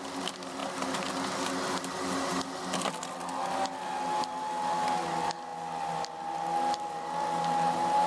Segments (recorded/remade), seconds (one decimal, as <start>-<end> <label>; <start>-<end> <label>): 0.0-8.1 recorded